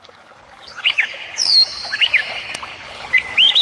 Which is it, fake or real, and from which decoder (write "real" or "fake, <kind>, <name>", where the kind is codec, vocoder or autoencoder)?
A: fake, codec, DAC